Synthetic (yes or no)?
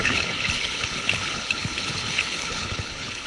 yes